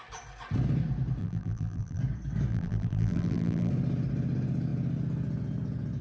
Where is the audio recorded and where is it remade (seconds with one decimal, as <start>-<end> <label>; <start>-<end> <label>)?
0.0-1.2 recorded; 1.2-2.0 remade; 2.0-2.5 recorded; 2.5-3.7 remade; 3.7-6.0 recorded